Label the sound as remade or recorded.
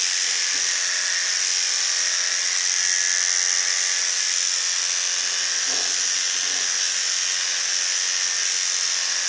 recorded